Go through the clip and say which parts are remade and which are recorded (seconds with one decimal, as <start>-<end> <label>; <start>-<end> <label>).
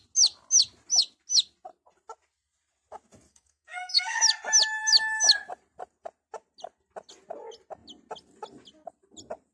0.0-3.3 recorded; 3.3-4.2 remade; 4.2-9.5 recorded